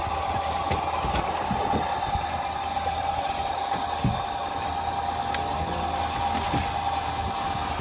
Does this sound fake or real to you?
real